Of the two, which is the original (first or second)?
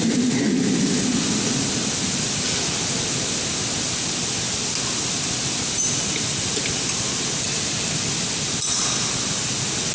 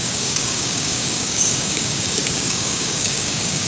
first